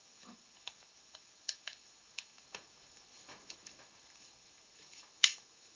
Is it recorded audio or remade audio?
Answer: remade